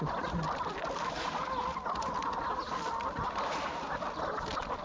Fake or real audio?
real